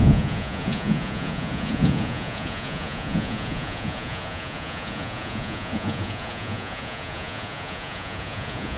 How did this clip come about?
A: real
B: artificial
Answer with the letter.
B